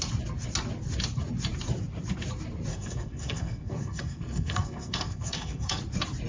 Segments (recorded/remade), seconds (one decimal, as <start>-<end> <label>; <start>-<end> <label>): 0.0-2.7 recorded; 2.7-5.8 remade; 5.8-6.3 recorded